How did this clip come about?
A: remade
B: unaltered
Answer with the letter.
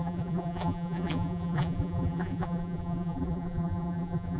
A